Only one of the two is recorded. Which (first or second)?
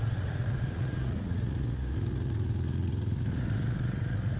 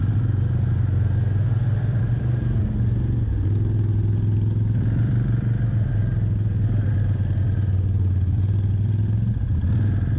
second